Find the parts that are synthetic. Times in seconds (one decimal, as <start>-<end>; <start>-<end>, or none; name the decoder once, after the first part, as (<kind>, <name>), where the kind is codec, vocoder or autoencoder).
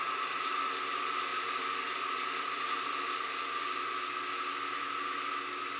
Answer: none